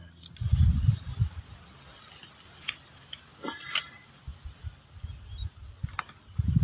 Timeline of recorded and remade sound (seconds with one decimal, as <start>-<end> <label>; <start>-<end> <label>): 0.0-6.6 recorded